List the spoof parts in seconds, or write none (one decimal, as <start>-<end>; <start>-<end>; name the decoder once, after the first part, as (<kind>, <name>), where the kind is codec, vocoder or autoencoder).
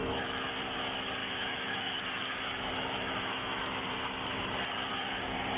0.0-0.5 (autoencoder, DAC-VAE); 1.2-3.9